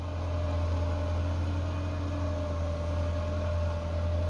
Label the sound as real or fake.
real